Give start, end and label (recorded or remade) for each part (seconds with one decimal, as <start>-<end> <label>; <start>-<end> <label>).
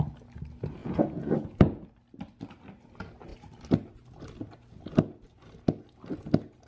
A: 0.0-0.8 recorded; 0.8-1.9 remade; 1.9-6.7 recorded